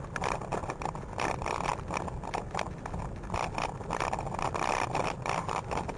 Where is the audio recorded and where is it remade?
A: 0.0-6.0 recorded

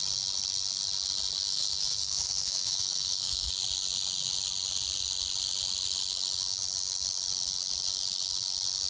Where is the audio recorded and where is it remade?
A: 0.0-1.5 recorded; 1.5-3.5 remade; 3.5-8.9 recorded

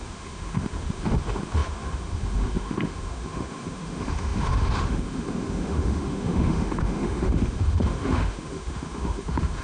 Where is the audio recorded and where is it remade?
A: 0.0-9.6 remade